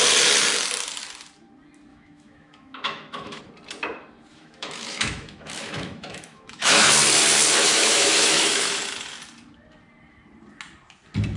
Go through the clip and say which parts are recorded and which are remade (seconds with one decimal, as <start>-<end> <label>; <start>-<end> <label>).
0.0-1.9 recorded; 1.9-3.4 remade; 3.4-4.3 recorded; 4.3-6.9 remade; 6.9-7.6 recorded; 7.6-8.8 remade; 8.8-11.4 recorded